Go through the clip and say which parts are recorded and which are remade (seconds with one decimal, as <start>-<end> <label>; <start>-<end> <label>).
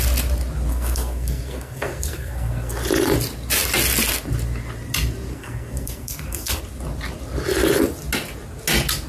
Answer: 0.0-0.7 recorded; 0.7-2.8 remade; 2.8-5.3 recorded; 5.3-6.6 remade; 6.6-9.1 recorded